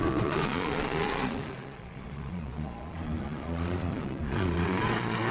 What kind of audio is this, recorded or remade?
remade